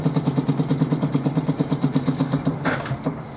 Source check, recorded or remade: recorded